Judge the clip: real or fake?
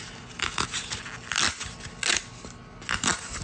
real